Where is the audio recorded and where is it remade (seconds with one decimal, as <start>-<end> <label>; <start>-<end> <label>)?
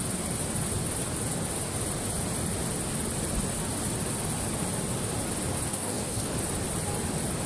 0.0-5.7 recorded; 5.7-6.3 remade; 6.3-7.5 recorded